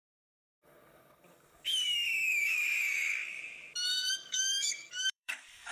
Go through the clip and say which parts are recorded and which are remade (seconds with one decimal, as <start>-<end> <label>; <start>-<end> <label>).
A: 0.0-3.4 remade; 3.4-3.9 recorded; 3.9-5.7 remade